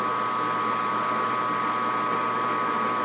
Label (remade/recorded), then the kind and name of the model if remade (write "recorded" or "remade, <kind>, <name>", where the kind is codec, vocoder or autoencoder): recorded